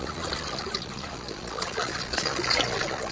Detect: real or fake fake